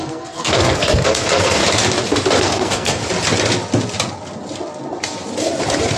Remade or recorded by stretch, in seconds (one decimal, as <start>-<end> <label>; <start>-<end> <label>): 0.0-1.6 remade; 1.6-2.4 recorded; 2.4-3.0 remade; 3.0-6.0 recorded